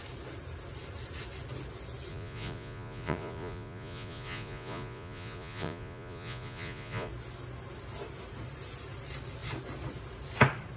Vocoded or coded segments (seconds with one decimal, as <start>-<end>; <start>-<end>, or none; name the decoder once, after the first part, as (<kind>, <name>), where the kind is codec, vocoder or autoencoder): 2.1-7.1 (vocoder, Vocos)